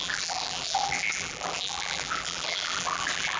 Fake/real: fake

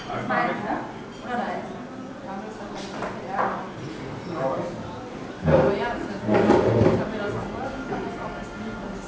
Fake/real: real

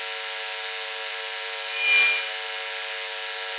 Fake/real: real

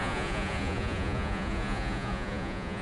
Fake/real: fake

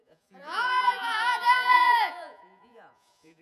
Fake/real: fake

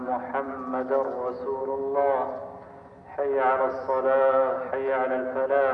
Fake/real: real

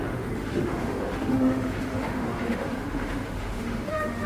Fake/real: fake